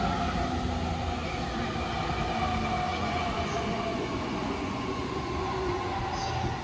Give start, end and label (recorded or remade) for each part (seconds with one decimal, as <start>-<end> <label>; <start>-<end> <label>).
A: 0.0-2.9 recorded; 2.9-6.0 remade; 6.0-6.6 recorded